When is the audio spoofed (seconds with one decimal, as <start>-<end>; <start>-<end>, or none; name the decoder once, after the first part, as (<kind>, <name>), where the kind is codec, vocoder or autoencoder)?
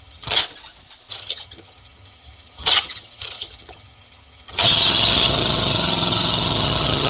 0.0-0.4 (vocoder, HiFi-GAN); 1.1-7.1